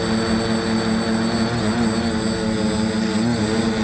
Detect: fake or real real